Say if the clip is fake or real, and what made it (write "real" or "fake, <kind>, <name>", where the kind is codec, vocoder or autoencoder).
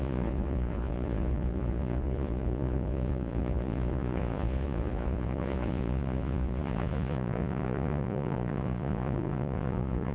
fake, vocoder, Vocos